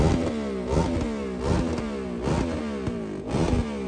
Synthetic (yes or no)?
no